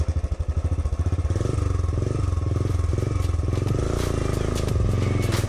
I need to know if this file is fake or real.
real